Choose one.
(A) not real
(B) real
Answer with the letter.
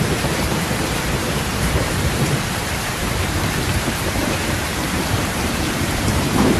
A